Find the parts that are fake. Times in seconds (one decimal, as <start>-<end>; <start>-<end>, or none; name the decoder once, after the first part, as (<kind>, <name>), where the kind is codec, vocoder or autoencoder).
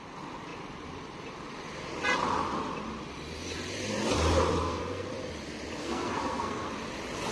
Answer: 4.6-5.1 (codec, SNAC); 5.8-6.7